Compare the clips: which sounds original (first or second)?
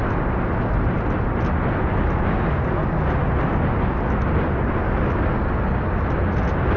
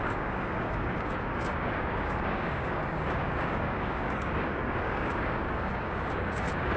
first